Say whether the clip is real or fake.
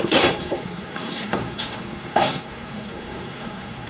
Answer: fake